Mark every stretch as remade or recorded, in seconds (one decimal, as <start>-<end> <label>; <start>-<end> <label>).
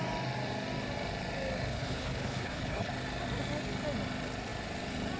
0.0-1.7 recorded; 1.7-2.9 remade; 2.9-5.2 recorded